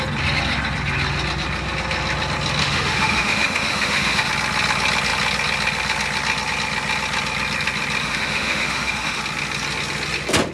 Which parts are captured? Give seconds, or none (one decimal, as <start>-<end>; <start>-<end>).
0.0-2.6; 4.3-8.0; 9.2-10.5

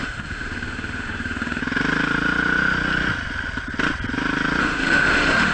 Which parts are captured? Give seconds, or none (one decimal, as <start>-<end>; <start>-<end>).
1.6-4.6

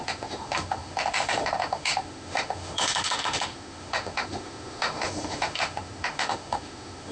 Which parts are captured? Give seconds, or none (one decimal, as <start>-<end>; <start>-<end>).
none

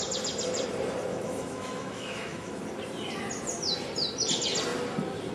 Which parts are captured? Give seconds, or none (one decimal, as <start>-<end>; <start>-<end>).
0.0-1.1; 2.6-5.3

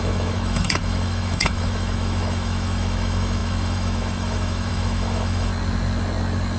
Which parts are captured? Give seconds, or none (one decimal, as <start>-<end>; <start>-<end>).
5.5-6.6